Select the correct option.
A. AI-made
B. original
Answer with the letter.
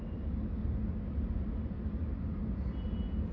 B